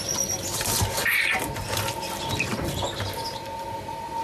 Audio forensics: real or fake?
fake